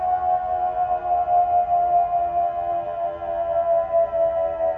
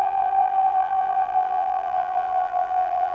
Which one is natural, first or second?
first